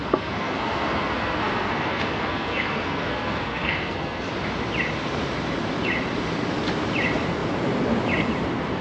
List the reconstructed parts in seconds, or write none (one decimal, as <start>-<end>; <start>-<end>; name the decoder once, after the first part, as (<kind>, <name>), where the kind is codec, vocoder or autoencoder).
0.0-4.3 (codec, SNAC)